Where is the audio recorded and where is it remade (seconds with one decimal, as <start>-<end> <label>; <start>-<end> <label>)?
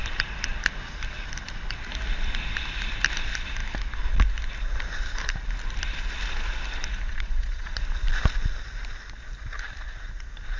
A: 0.0-7.1 recorded; 7.1-7.8 remade; 7.8-10.6 recorded